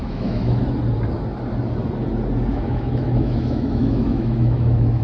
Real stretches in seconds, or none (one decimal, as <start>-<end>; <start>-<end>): 0.6-2.5